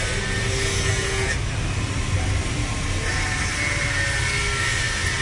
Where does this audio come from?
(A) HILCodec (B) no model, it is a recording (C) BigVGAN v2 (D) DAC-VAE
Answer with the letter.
B